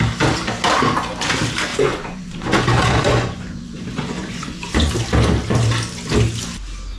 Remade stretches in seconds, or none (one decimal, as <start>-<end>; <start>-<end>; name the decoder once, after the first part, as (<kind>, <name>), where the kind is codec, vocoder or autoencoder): 1.7-4.9 (vocoder, Vocos)